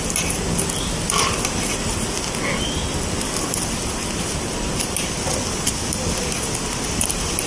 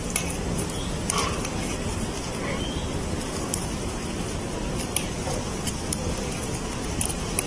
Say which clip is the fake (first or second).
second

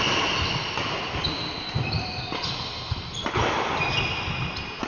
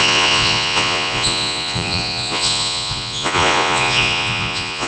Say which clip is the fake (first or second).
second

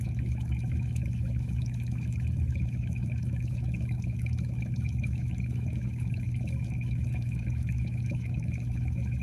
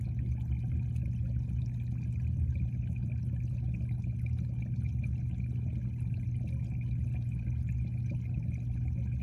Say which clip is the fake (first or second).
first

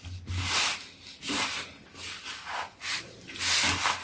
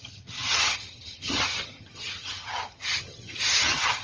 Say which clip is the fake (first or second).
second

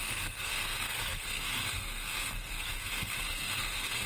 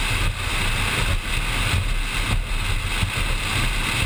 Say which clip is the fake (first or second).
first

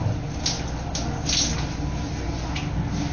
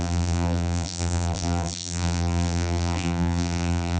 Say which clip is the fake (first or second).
second